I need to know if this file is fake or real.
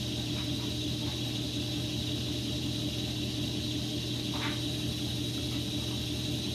real